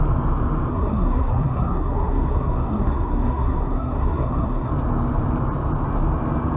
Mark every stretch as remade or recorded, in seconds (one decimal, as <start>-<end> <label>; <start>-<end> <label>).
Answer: 0.0-0.7 recorded; 0.7-4.7 remade; 4.7-6.6 recorded